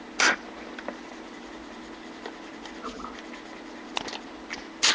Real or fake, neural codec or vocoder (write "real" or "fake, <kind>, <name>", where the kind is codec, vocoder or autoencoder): real